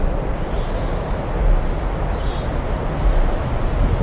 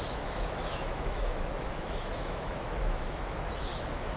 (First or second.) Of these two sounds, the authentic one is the first